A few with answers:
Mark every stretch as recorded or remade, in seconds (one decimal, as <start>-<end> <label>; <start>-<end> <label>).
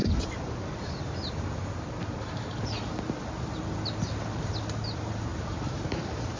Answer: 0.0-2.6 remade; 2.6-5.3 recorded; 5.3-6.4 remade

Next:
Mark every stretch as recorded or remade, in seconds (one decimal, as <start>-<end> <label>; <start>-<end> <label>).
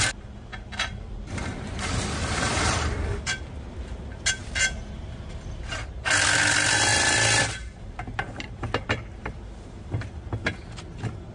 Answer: 0.0-0.5 recorded; 0.5-3.7 remade; 3.7-11.3 recorded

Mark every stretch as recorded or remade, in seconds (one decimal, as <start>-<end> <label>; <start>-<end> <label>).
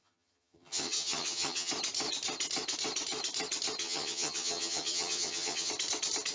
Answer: 0.0-1.7 remade; 1.7-3.8 recorded; 3.8-5.7 remade; 5.7-6.3 recorded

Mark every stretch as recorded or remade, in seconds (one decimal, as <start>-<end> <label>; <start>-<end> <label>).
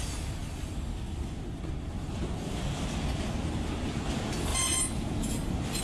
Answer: 0.0-5.8 recorded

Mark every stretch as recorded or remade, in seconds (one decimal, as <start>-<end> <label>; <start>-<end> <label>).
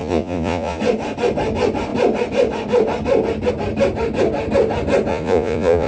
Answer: 0.0-0.8 remade; 0.8-5.1 recorded; 5.1-5.9 remade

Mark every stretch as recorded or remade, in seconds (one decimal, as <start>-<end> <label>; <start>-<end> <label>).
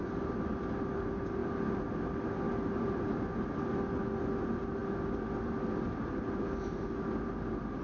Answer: 0.0-7.8 recorded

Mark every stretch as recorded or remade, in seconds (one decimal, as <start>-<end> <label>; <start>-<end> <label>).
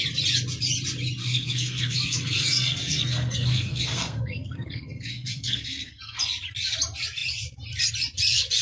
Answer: 0.0-1.2 recorded; 1.2-6.2 remade; 6.2-8.6 recorded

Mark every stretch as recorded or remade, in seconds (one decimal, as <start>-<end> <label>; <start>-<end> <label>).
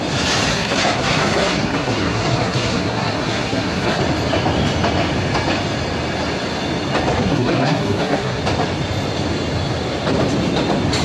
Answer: 0.0-0.5 recorded; 0.5-4.0 remade; 4.0-7.1 recorded; 7.1-8.4 remade; 8.4-11.0 recorded